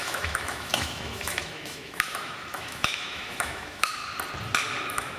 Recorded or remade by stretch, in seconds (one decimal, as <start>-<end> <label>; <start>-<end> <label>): 0.0-4.0 remade; 4.0-4.8 recorded; 4.8-5.2 remade